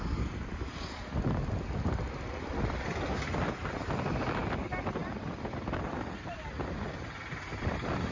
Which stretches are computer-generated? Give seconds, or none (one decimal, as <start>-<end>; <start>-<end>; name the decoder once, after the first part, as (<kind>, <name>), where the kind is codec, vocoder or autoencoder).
none